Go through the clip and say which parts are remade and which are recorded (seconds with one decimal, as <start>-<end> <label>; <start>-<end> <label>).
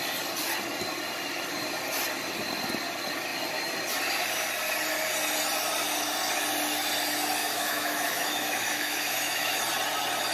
0.0-7.4 recorded; 7.4-9.6 remade; 9.6-10.3 recorded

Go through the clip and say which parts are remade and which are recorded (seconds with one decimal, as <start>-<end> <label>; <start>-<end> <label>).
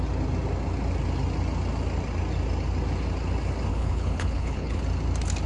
0.0-3.7 recorded; 3.7-4.8 remade; 4.8-5.5 recorded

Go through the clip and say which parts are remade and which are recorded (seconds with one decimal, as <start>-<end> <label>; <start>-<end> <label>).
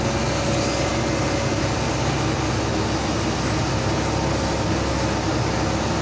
0.0-6.0 recorded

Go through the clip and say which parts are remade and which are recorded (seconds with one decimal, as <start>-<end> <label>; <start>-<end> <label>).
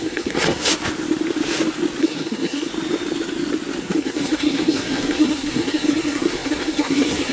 0.0-0.7 remade; 0.7-2.0 recorded; 2.0-2.7 remade; 2.7-3.8 recorded; 3.8-7.3 remade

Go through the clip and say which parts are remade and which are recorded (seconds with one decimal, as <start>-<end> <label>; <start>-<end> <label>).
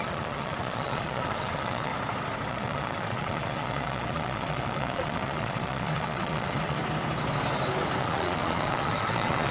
0.0-1.9 remade; 1.9-2.5 recorded; 2.5-6.8 remade; 6.8-8.0 recorded; 8.0-9.5 remade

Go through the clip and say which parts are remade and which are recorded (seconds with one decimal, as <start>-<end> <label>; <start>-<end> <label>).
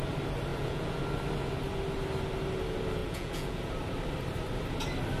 0.0-0.5 recorded; 0.5-1.0 remade; 1.0-3.0 recorded; 3.0-3.6 remade; 3.6-5.2 recorded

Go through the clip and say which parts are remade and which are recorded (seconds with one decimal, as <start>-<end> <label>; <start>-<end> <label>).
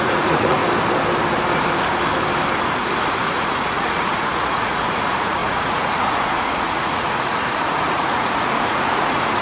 0.0-0.6 remade; 0.6-2.7 recorded; 2.7-9.4 remade